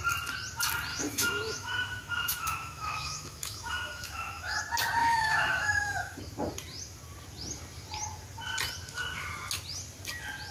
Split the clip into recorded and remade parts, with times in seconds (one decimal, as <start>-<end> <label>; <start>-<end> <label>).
0.0-0.9 recorded; 0.9-4.6 remade; 4.6-5.0 recorded; 5.0-6.2 remade; 6.2-10.5 recorded